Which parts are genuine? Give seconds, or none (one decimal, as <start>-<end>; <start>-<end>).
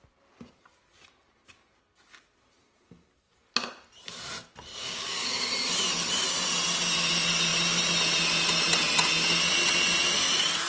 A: 0.0-4.7; 5.5-10.7